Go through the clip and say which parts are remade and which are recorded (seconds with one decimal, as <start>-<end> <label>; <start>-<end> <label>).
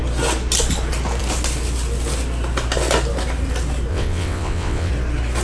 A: 0.0-3.9 recorded; 3.9-4.9 remade; 4.9-5.4 recorded